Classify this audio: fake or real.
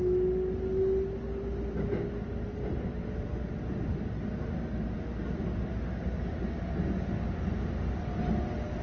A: real